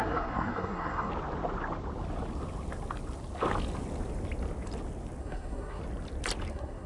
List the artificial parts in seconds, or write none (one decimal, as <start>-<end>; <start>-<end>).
0.0-1.1; 5.2-5.8; 6.5-6.9